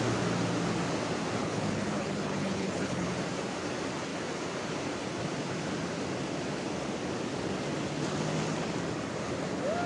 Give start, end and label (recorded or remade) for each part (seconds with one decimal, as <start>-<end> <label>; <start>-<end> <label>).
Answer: 0.0-1.4 recorded; 1.4-3.1 remade; 3.1-9.9 recorded